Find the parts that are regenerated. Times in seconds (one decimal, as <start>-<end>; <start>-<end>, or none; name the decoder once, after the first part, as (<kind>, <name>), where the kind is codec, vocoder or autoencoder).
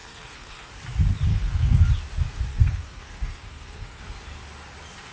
0.0-0.7 (codec, SNAC); 1.3-1.9; 2.5-4.0